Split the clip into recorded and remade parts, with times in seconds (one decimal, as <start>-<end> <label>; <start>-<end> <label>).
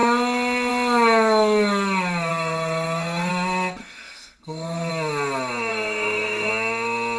0.0-2.3 recorded; 2.3-3.3 remade; 3.3-3.8 recorded; 3.8-4.9 remade; 4.9-5.7 recorded; 5.7-6.5 remade; 6.5-7.2 recorded